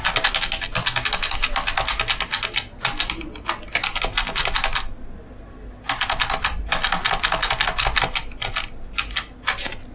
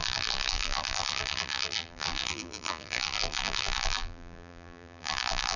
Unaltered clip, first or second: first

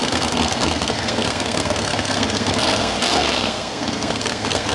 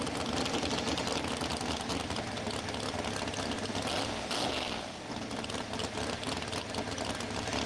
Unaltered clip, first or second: second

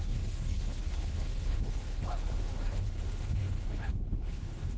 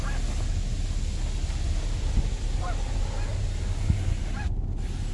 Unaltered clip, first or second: second